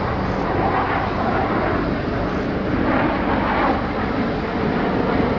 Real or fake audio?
real